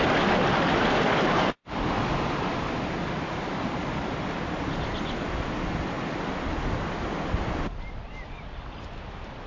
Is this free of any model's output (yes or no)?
yes